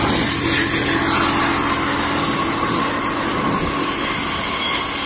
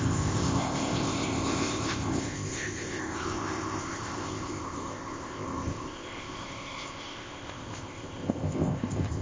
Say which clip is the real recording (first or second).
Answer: first